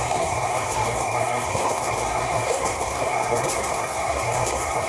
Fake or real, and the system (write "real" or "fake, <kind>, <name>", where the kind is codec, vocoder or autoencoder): fake, codec, SNAC